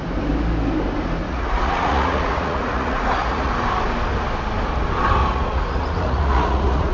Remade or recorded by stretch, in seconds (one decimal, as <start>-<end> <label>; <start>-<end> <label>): 0.0-1.2 recorded; 1.2-3.5 remade; 3.5-5.2 recorded; 5.2-6.9 remade